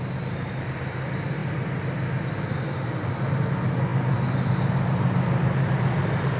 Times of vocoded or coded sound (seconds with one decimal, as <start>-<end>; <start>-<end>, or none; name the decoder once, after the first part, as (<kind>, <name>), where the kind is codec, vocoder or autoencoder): none